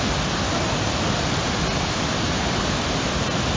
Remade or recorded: recorded